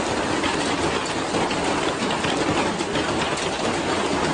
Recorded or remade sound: recorded